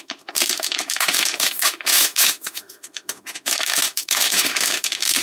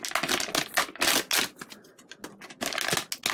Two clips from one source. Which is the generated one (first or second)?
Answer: first